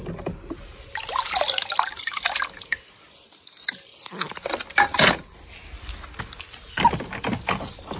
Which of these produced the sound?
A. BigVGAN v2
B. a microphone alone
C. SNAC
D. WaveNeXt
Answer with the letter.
B